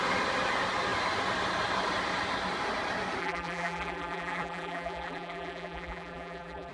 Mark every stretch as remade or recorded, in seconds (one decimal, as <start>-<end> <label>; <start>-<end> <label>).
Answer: 0.0-3.2 recorded; 3.2-6.7 remade